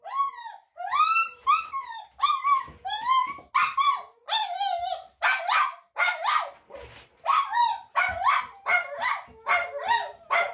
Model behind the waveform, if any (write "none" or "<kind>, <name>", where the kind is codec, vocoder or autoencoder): none